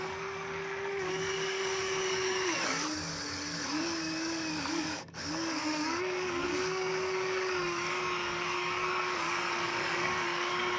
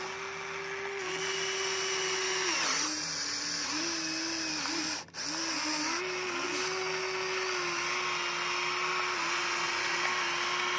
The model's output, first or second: first